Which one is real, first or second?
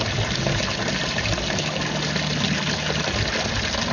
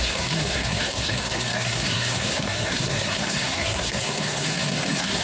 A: first